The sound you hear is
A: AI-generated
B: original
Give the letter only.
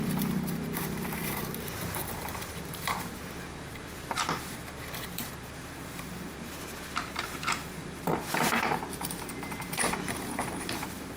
A